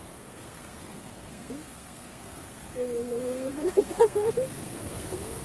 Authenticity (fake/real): fake